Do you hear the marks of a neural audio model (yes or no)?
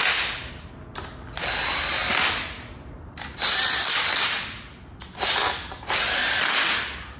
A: no